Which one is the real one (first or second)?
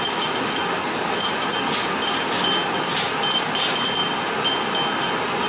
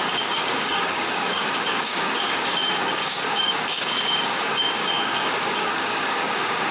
first